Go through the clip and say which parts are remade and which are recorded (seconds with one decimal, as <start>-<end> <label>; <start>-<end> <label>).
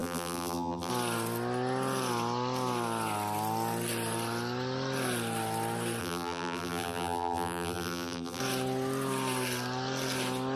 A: 0.0-0.9 remade; 0.9-6.0 recorded; 6.0-8.4 remade; 8.4-10.6 recorded